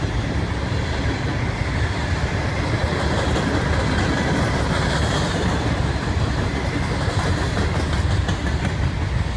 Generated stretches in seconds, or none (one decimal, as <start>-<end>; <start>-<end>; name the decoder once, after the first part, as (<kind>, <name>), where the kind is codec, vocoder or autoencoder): none